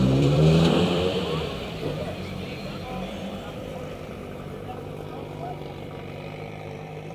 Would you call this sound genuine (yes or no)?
no